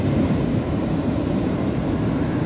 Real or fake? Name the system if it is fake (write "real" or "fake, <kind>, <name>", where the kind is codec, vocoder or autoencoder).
fake, vocoder, BigVGAN v2